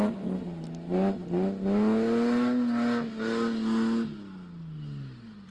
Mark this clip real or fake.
real